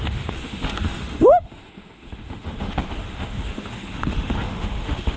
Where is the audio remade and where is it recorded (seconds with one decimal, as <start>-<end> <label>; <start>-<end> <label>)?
0.0-5.2 remade